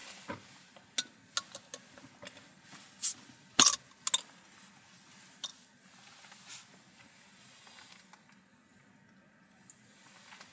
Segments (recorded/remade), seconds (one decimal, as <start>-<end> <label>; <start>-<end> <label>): 0.0-10.5 recorded

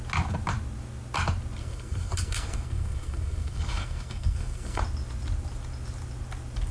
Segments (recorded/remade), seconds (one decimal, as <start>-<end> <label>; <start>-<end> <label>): 0.0-1.6 recorded; 1.6-4.8 remade; 4.8-6.7 recorded

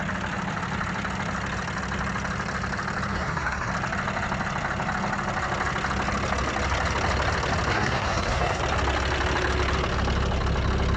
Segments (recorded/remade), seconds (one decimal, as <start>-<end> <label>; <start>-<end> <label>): 0.0-3.1 recorded; 3.1-3.7 remade; 3.7-7.7 recorded; 7.7-8.6 remade; 8.6-11.0 recorded

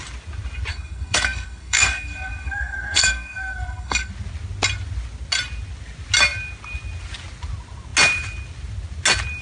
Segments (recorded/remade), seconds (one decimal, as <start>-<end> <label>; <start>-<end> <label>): 0.0-0.7 recorded; 0.7-4.1 remade; 4.1-9.4 recorded

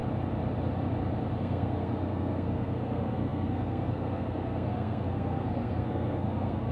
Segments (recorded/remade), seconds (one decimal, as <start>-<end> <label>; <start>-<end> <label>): 0.0-1.4 recorded; 1.4-6.7 remade

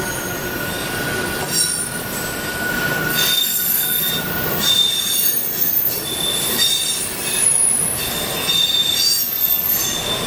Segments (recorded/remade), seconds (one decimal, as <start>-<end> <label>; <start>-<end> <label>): 0.0-3.1 recorded; 3.1-4.1 remade; 4.1-10.3 recorded

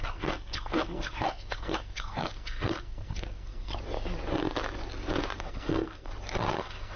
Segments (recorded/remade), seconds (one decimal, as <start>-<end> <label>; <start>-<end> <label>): 0.0-3.7 remade; 3.7-5.4 recorded; 5.4-6.1 remade; 6.1-6.6 recorded; 6.6-7.0 remade